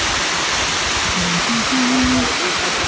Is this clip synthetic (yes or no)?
no